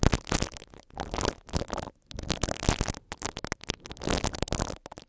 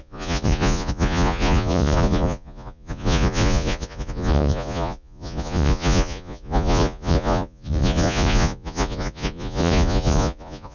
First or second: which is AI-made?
second